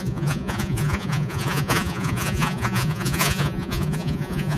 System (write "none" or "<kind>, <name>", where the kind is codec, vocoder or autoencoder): vocoder, Vocos